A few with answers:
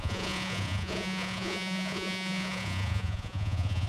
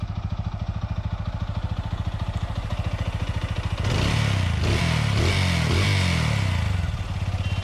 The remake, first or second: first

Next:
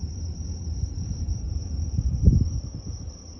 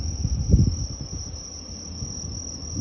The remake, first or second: first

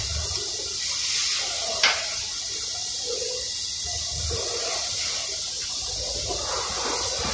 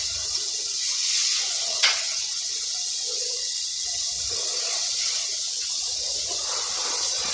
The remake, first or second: second